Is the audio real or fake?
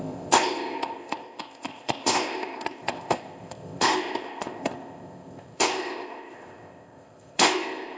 fake